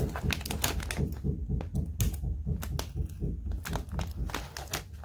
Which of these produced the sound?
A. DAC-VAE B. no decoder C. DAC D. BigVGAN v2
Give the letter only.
B